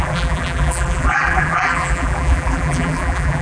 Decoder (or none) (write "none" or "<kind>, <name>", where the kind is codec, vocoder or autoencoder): vocoder, BigVGAN v2